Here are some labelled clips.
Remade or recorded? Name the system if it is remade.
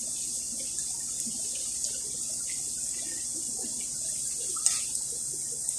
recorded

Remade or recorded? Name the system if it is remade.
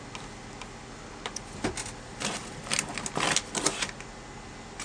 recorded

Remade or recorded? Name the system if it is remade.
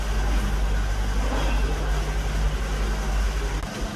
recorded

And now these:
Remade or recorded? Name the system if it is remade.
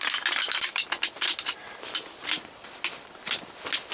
recorded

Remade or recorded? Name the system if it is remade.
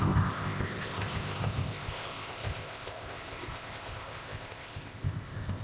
remade, codec, ZipCodec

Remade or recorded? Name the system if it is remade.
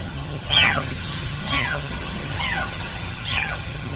remade, vocoder, HiFi-GAN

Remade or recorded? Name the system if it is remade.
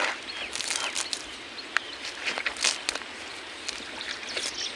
recorded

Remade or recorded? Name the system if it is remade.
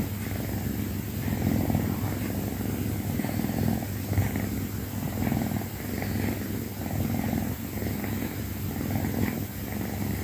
recorded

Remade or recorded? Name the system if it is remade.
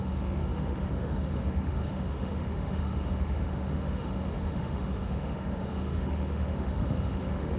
remade, autoencoder, DAC-VAE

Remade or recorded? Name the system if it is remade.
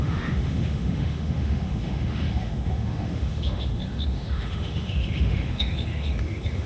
remade, autoencoder, DAC-VAE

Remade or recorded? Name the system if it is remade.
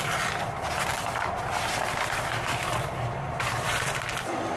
remade, vocoder, BigVGAN v2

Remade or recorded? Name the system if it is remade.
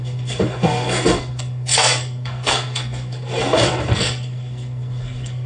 remade, codec, SNAC